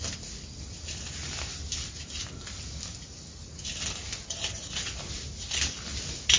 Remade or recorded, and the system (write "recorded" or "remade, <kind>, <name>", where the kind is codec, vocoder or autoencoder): recorded